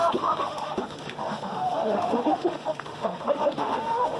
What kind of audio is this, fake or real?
fake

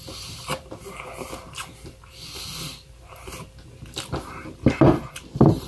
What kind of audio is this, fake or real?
real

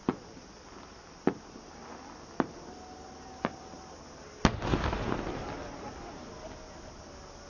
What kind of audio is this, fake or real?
real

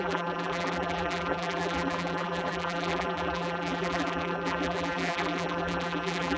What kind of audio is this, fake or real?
fake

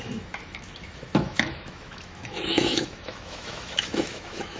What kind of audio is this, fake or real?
fake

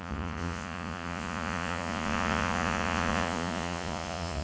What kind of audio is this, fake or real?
fake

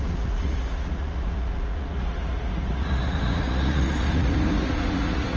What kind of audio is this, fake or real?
fake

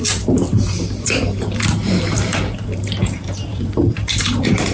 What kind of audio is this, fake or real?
fake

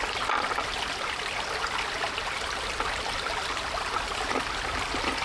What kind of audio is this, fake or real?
real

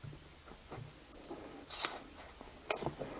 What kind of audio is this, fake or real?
real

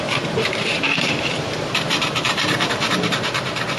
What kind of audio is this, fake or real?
fake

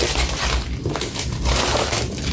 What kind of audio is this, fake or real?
real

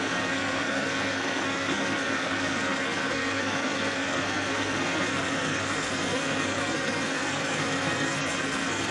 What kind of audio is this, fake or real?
fake